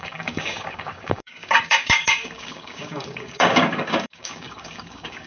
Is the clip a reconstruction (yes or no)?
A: yes